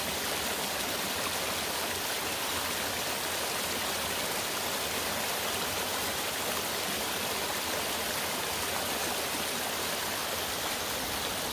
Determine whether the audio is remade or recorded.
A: recorded